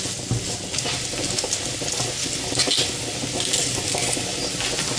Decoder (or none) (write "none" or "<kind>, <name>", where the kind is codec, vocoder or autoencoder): none